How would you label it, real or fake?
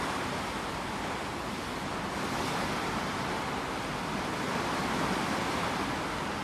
real